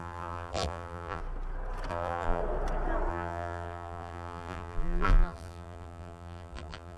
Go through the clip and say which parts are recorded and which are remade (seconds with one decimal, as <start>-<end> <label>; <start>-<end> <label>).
0.0-1.2 remade; 1.2-1.9 recorded; 1.9-2.4 remade; 2.4-3.1 recorded; 3.1-7.0 remade